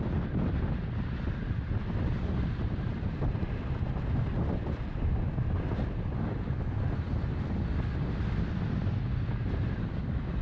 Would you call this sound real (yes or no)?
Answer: yes